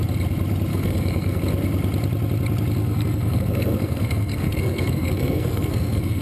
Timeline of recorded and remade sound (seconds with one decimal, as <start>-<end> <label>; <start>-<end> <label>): 0.0-0.7 recorded; 0.7-1.4 remade; 1.4-2.8 recorded; 2.8-6.2 remade